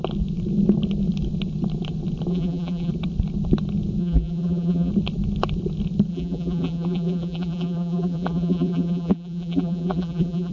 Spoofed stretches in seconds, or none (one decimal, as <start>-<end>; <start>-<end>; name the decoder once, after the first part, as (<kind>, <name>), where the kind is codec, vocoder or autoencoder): 2.3-2.9 (vocoder, BigVGAN v2); 4.0-4.9; 6.1-10.5